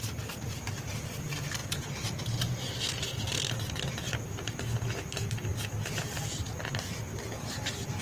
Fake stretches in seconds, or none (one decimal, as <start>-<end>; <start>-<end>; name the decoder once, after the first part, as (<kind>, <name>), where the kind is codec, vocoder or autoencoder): none